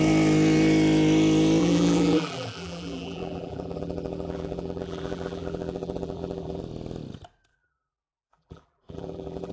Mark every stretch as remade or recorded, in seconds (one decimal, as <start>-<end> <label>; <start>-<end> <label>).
0.0-1.6 recorded; 1.6-6.6 remade; 6.6-7.5 recorded; 7.5-9.5 remade